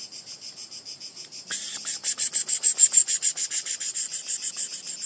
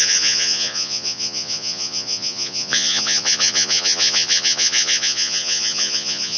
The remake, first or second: second